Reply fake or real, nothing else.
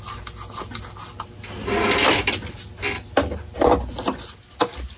real